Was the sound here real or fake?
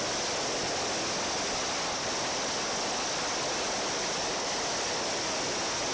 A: real